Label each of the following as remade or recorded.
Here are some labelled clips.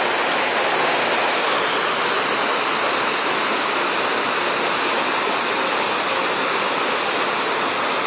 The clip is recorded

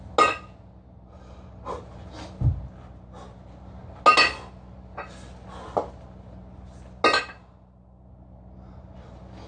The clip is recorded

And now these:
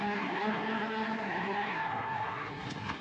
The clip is remade